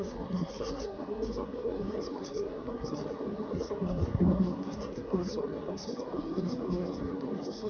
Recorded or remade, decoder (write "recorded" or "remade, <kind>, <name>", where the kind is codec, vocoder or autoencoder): remade, codec, SNAC